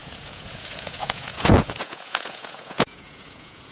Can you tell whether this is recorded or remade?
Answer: remade